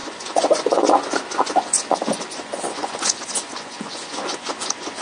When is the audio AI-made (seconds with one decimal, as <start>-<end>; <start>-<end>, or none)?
0.0-5.0